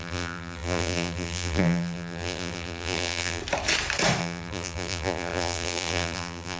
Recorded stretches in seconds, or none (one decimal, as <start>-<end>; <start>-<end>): 3.4-4.2